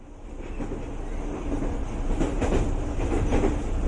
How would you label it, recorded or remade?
recorded